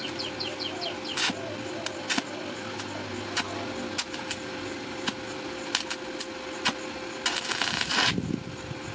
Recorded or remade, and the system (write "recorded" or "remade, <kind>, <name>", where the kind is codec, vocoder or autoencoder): recorded